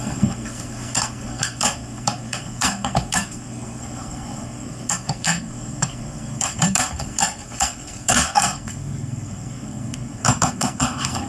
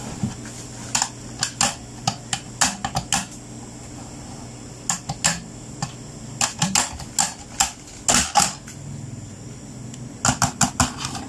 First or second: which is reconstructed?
first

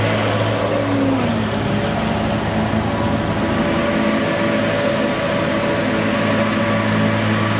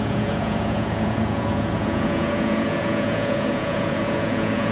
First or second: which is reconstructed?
second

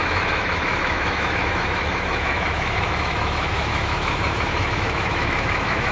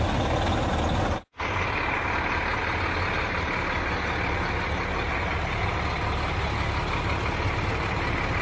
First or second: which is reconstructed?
first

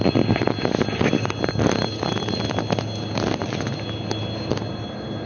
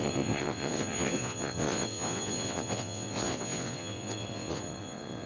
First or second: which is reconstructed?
second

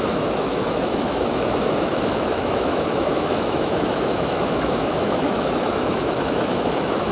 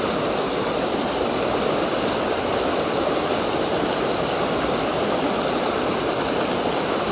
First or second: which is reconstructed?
first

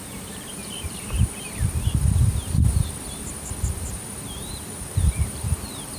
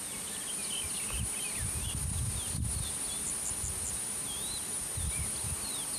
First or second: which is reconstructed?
first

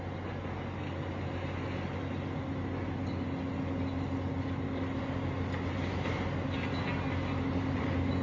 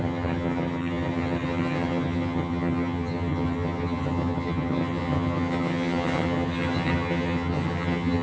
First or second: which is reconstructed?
second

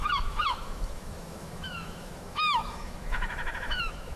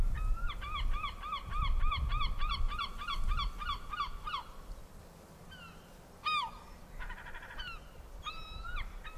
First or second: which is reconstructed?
first